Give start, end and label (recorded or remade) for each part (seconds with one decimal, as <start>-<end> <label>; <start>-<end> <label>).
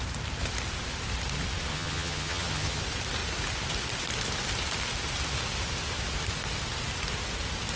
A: 0.0-1.7 recorded; 1.7-2.8 remade; 2.8-7.8 recorded